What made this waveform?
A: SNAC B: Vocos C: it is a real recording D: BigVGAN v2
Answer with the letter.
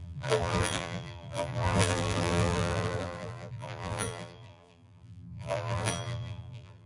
D